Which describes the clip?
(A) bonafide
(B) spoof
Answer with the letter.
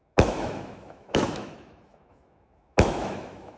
B